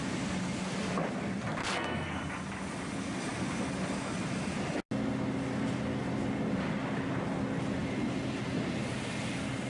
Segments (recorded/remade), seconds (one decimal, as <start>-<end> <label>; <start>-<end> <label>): 0.0-1.6 recorded; 1.6-2.2 remade; 2.2-9.7 recorded